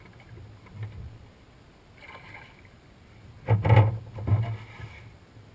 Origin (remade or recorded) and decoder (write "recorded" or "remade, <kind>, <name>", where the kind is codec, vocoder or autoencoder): recorded